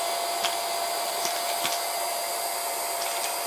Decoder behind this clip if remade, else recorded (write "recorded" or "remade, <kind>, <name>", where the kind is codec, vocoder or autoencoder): recorded